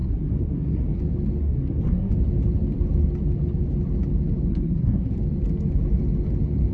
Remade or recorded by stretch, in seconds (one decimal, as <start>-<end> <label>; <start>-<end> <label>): 0.0-1.0 remade; 1.0-1.4 recorded; 1.4-2.1 remade; 2.1-4.5 recorded; 4.5-5.1 remade; 5.1-6.7 recorded